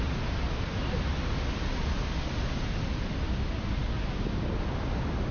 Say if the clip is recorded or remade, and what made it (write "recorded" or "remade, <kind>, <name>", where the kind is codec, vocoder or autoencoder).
recorded